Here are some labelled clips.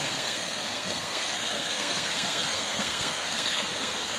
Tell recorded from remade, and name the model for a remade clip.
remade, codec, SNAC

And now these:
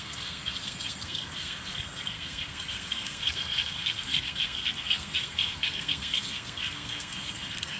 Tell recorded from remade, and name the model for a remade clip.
remade, codec, SNAC